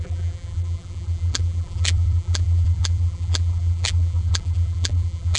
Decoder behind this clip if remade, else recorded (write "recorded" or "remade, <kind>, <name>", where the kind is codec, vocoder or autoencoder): remade, vocoder, BigVGAN v2